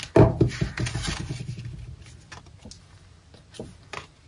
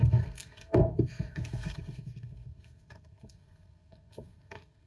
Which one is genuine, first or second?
first